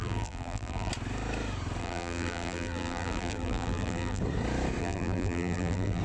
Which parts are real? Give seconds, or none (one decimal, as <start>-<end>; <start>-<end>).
0.9-1.8; 4.2-4.8